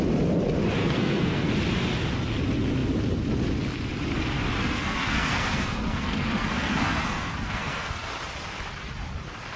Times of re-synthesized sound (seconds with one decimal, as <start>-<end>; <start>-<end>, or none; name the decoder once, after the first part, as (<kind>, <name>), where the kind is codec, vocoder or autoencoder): 0.8-1.5 (codec, SNAC); 4.6-8.1